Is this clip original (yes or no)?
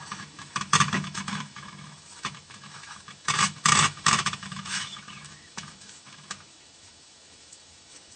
no